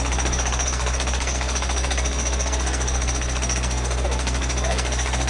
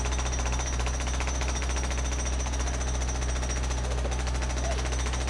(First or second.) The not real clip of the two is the first